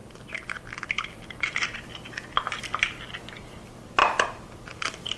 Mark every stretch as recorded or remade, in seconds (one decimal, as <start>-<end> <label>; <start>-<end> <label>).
0.0-5.2 recorded